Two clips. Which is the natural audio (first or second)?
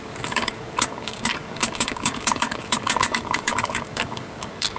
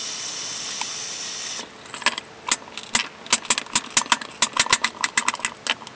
second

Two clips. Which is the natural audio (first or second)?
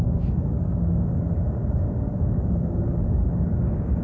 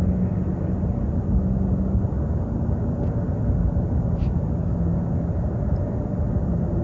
second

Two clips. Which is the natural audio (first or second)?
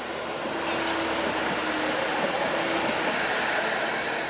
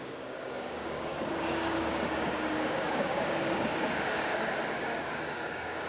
first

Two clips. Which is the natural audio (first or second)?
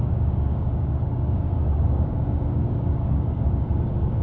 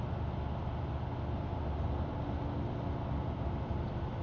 second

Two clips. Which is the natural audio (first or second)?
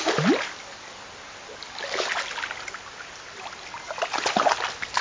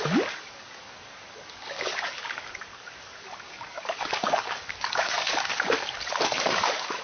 first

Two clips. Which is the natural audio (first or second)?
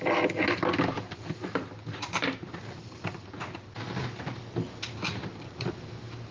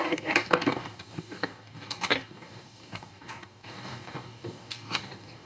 first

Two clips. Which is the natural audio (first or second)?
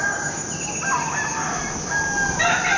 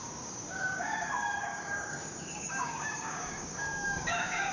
first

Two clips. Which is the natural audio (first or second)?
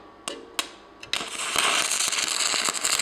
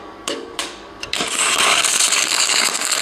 first